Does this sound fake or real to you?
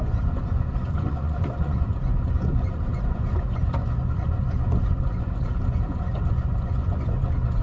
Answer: fake